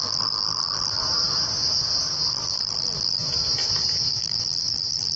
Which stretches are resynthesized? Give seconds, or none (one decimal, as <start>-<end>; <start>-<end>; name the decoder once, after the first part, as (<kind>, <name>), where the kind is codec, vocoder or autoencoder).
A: 0.0-1.0 (vocoder, BigVGAN v2); 2.3-3.2; 4.1-5.2

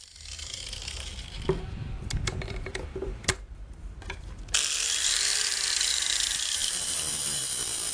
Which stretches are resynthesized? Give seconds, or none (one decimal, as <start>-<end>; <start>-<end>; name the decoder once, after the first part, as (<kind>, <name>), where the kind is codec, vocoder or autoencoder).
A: 0.0-7.9 (vocoder, BigVGAN v2)

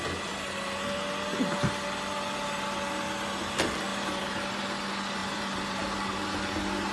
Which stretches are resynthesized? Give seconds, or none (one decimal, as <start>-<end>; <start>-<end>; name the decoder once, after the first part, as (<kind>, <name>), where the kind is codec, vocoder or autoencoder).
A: 3.9-4.6 (vocoder, BigVGAN v2); 5.2-5.8